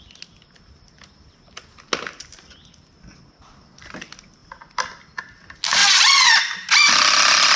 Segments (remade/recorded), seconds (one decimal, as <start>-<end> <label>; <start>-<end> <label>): 0.0-4.4 recorded; 4.4-5.2 remade; 5.2-5.8 recorded; 5.8-6.4 remade; 6.4-7.6 recorded